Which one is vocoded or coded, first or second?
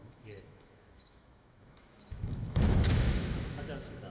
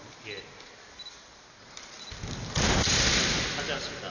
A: first